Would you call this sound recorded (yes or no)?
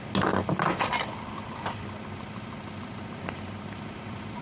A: yes